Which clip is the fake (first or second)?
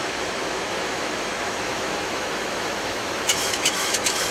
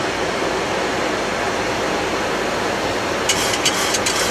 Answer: first